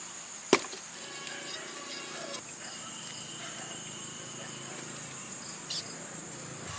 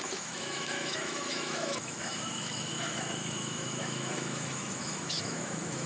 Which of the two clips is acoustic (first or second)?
first